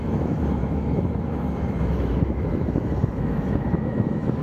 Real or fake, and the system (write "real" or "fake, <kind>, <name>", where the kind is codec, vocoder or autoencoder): fake, autoencoder, DAC-VAE